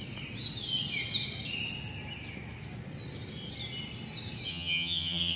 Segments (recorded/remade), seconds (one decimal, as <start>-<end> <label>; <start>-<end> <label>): 0.0-4.5 recorded; 4.5-5.4 remade